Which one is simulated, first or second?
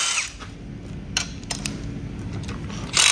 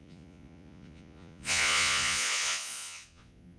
second